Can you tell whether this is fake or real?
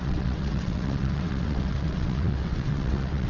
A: fake